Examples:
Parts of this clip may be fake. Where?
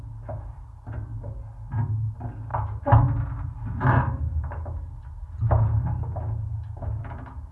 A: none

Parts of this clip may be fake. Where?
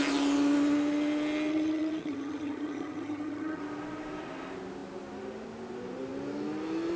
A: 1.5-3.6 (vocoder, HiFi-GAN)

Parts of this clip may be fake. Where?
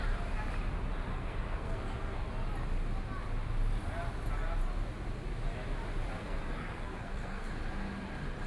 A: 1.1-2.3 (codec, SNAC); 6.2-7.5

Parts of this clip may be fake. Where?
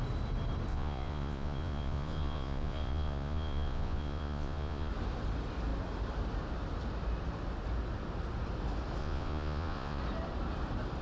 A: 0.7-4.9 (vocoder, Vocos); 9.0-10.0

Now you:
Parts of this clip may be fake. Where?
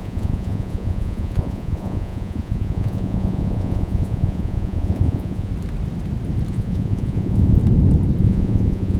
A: 0.0-5.5 (vocoder, Vocos); 6.5-7.6; 8.2-9.0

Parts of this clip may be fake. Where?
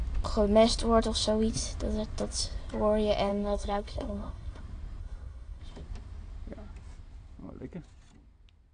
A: 3.3-4.6 (codec, SNAC); 5.0-5.6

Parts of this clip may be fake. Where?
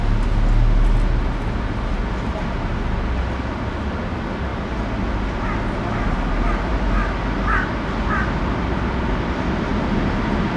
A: none